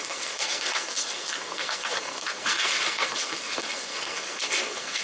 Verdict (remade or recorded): remade